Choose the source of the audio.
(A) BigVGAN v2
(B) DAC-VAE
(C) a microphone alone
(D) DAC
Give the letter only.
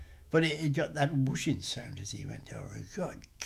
B